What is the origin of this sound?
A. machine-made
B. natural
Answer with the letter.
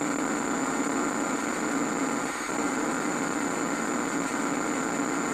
B